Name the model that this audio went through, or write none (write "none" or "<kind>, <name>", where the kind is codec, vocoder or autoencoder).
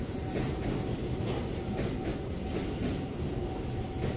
none